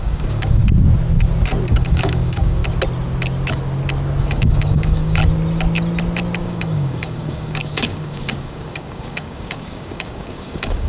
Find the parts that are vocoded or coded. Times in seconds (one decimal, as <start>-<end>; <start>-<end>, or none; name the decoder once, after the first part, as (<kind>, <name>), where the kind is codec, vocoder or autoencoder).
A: 0.0-0.6 (codec, DAC); 1.7-2.6; 4.2-5.2; 6.4-10.9